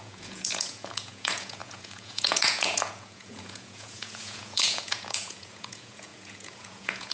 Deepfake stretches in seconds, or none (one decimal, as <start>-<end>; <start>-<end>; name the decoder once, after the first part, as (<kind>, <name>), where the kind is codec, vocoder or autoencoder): 0.0-7.1 (vocoder, Vocos)